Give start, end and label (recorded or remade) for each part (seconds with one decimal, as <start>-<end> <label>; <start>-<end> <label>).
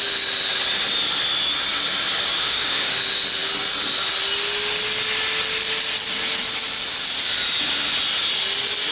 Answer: 0.0-2.4 recorded; 2.4-2.9 remade; 2.9-8.9 recorded